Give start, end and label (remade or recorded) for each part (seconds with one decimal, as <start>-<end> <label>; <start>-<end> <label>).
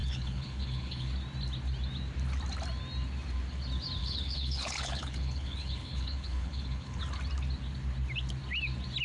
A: 0.0-1.1 remade; 1.1-4.0 recorded; 4.0-7.0 remade; 7.0-9.0 recorded